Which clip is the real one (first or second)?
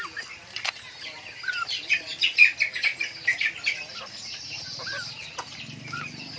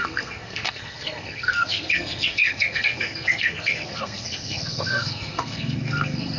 first